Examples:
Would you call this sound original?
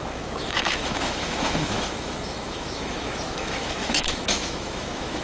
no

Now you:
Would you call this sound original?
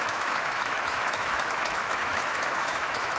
no